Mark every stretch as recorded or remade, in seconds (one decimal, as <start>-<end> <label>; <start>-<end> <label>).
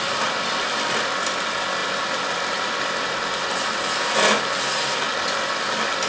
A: 0.0-6.1 recorded